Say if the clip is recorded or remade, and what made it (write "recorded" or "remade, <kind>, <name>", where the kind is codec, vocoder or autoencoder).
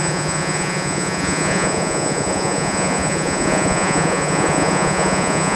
remade, vocoder, Vocos